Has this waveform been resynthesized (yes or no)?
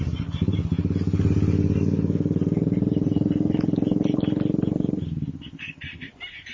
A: no